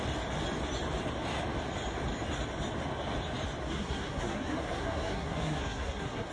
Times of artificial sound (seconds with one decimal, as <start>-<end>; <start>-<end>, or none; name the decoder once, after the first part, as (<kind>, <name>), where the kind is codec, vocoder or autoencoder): 3.6-6.3 (codec, SNAC)